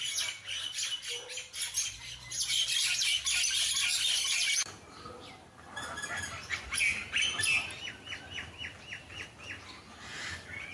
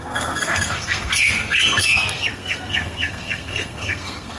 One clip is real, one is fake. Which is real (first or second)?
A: first